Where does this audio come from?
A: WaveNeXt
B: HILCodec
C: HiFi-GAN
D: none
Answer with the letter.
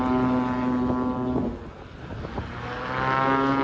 D